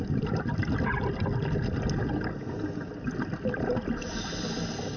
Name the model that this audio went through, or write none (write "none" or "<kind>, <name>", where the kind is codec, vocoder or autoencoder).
none